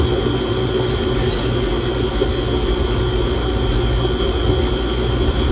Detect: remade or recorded recorded